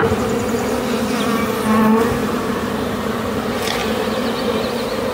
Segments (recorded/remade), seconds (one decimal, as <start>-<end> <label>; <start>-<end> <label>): 0.0-2.2 recorded; 2.2-3.4 remade; 3.4-3.8 recorded; 3.8-4.6 remade; 4.6-5.1 recorded